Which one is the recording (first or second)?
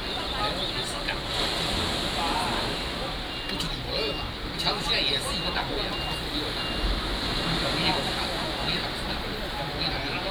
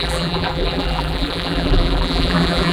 first